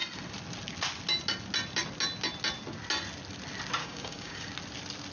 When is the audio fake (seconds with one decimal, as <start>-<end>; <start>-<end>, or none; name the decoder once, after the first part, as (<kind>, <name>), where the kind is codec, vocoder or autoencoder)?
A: 3.8-4.5 (codec, DAC)